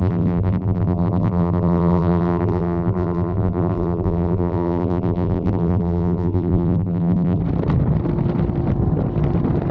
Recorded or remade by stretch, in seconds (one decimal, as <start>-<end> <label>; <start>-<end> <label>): 0.0-7.4 remade; 7.4-9.7 recorded